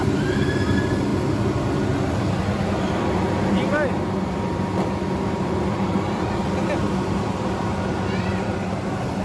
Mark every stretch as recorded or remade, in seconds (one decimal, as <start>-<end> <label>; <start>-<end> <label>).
0.0-1.1 remade; 1.1-5.2 recorded; 5.2-6.4 remade; 6.4-7.1 recorded; 7.1-9.2 remade